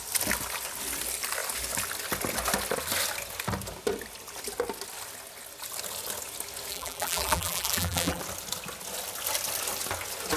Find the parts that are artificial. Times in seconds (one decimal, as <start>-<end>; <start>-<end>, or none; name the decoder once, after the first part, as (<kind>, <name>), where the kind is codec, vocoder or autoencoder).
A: 6.7-8.2 (vocoder, BigVGAN v2)